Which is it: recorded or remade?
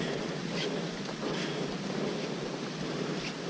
recorded